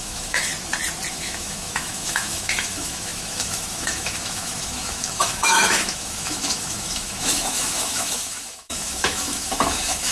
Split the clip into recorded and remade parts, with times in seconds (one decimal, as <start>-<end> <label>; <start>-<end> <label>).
0.0-0.5 remade; 0.5-1.1 recorded; 1.1-10.1 remade